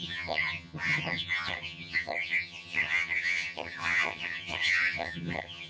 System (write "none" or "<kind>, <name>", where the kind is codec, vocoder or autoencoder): vocoder, HiFi-GAN